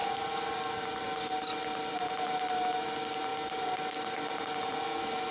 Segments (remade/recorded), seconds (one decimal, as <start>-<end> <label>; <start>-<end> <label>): 0.0-1.0 remade; 1.0-3.3 recorded; 3.3-4.4 remade; 4.4-5.3 recorded